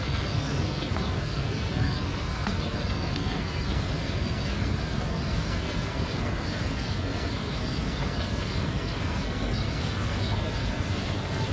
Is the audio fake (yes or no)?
yes